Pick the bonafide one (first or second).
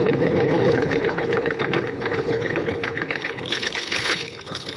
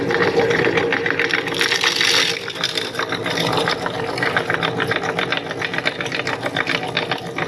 second